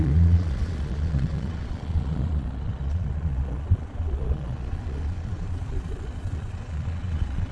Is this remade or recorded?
remade